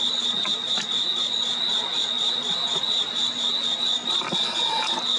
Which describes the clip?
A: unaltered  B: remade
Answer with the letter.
A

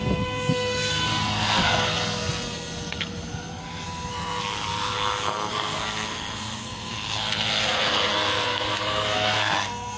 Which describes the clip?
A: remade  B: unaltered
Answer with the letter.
A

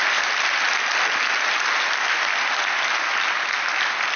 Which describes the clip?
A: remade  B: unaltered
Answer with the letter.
B